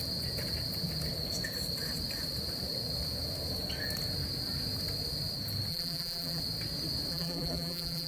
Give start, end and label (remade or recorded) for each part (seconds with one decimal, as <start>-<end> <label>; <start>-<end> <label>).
0.0-5.7 recorded; 5.7-6.4 remade; 6.4-7.1 recorded; 7.1-8.1 remade